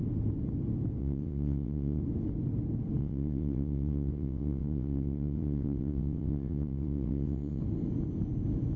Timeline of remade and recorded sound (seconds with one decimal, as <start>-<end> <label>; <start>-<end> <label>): 0.0-1.0 recorded; 1.0-2.0 remade; 2.0-3.0 recorded; 3.0-7.6 remade; 7.6-8.8 recorded